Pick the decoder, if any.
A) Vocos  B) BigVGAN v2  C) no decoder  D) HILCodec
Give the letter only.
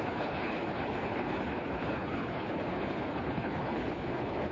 D